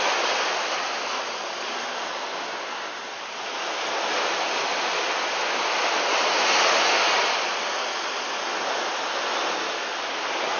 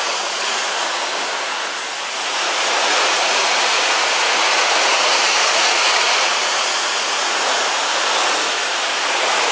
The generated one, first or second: second